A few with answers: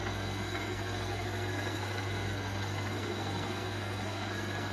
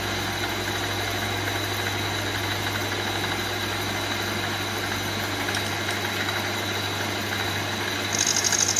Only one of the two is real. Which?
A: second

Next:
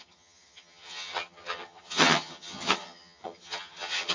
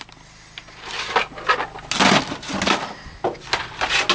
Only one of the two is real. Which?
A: second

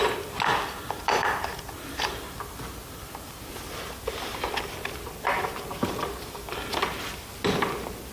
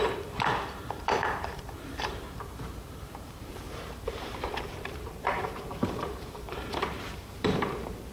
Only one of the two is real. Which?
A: first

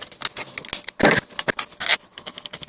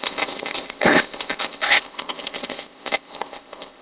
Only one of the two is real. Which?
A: first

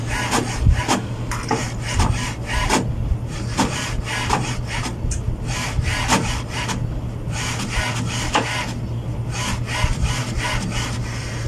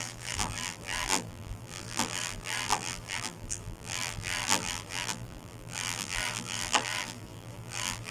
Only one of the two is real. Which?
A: first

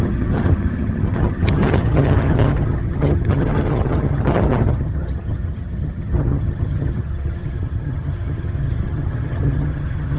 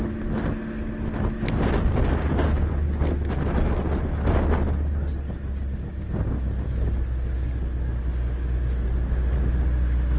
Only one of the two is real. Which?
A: second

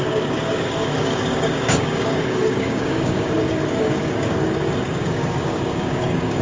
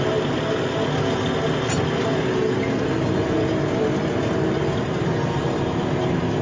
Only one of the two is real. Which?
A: second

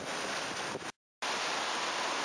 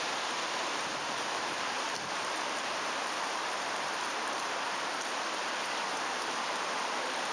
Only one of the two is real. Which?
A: first